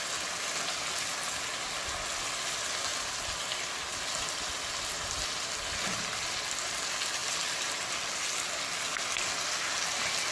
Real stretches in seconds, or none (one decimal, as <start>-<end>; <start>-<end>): 0.0-10.3